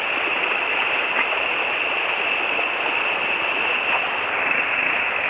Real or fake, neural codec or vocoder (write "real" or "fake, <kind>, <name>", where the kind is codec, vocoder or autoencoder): real